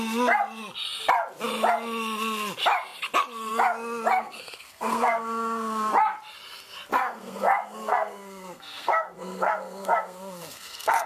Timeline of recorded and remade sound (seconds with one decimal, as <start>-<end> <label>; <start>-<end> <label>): 0.0-4.2 recorded; 4.2-5.9 remade; 5.9-6.9 recorded; 6.9-11.1 remade